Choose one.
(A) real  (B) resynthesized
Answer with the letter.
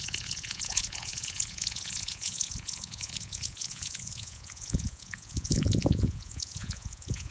B